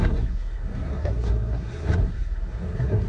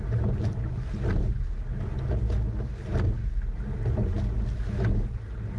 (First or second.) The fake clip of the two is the first